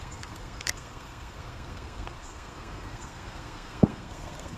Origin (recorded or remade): remade